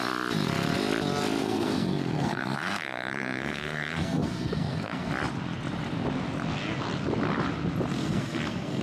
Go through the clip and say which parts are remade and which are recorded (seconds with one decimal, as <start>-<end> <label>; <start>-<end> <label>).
0.0-1.4 recorded; 1.4-5.1 remade; 5.1-8.0 recorded; 8.0-8.8 remade